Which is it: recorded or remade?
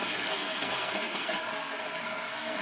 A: remade